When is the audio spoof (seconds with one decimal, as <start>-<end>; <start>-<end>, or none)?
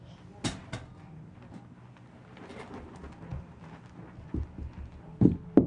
none